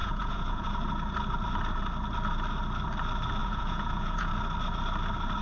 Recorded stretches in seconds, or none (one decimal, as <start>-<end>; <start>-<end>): 0.7-3.4; 4.3-5.4

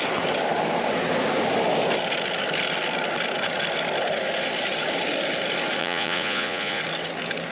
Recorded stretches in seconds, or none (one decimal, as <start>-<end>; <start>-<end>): 0.0-5.8; 6.8-7.5

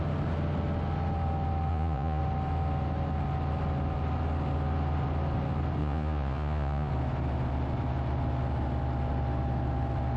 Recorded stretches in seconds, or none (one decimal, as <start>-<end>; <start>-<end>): 0.0-1.7; 2.2-5.8; 6.9-10.2

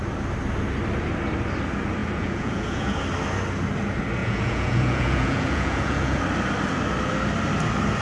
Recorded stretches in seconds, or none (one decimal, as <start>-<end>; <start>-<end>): 0.0-2.0; 3.0-4.2; 6.2-8.0